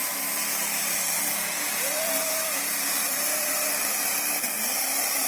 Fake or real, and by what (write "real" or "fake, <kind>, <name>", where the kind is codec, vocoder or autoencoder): fake, vocoder, BigVGAN v2